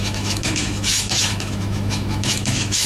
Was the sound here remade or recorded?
remade